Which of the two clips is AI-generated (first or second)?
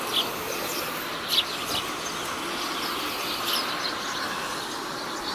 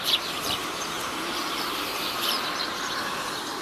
second